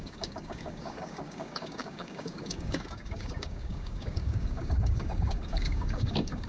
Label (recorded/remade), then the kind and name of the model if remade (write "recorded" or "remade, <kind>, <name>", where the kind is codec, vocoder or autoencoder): remade, codec, DAC